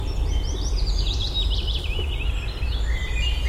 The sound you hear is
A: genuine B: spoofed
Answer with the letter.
A